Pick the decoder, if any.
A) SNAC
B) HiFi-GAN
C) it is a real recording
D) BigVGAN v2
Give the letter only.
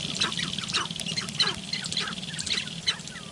C